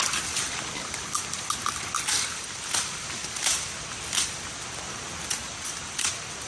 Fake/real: real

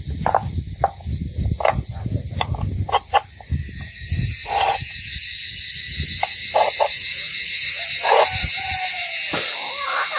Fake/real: real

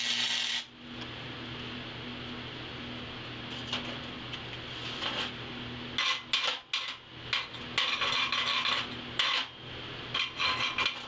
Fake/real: real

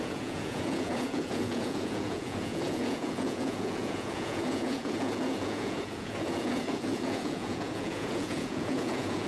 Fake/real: fake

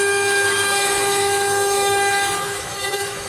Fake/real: fake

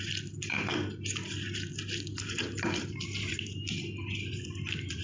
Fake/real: real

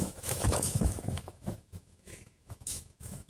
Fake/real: fake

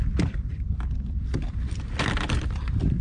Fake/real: real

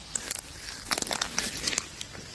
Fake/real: fake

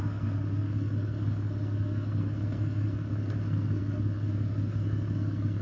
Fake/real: fake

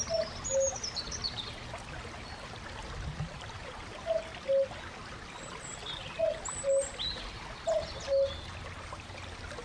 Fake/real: real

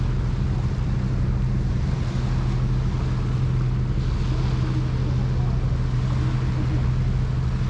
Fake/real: real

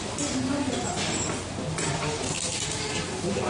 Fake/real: real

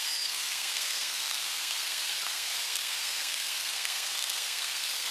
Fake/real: fake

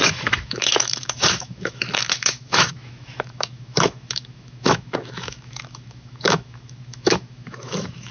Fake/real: fake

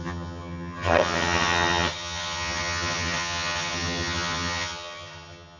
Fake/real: fake